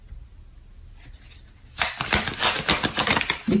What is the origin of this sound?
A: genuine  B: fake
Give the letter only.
A